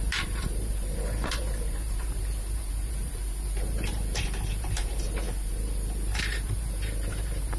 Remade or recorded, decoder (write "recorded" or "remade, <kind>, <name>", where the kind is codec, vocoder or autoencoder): remade, vocoder, BigVGAN v2